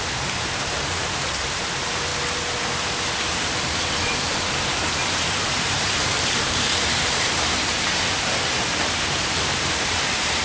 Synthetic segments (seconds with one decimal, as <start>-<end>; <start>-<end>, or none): 0.0-2.1; 3.6-10.4